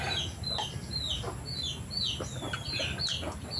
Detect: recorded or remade recorded